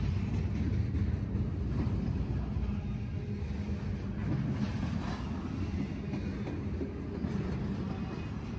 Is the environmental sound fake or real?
real